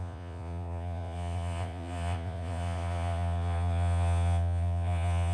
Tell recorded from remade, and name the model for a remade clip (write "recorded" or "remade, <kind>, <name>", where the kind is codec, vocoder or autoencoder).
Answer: remade, vocoder, Vocos